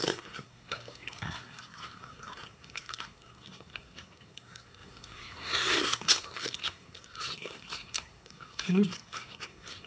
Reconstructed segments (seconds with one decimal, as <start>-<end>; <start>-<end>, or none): 0.0-9.9